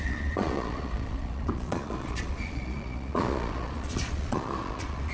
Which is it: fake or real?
fake